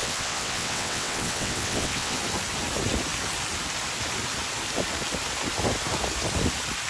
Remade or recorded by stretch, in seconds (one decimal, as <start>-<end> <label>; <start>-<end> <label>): 0.0-2.2 remade; 2.2-6.9 recorded